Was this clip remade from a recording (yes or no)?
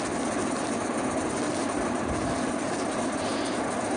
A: no